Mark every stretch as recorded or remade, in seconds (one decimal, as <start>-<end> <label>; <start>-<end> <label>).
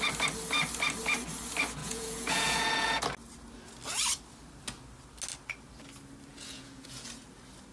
0.0-1.8 recorded; 1.8-3.0 remade; 3.0-6.3 recorded; 6.3-7.1 remade; 7.1-7.7 recorded